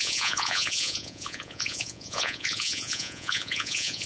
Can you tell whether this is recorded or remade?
remade